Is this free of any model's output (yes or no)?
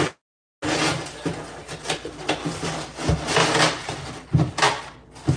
yes